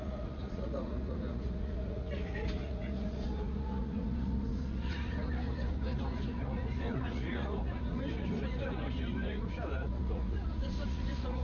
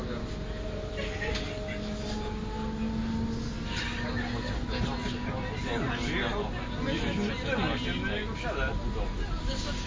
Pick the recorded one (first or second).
second